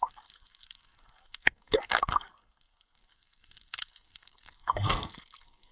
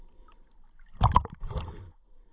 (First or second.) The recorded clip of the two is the second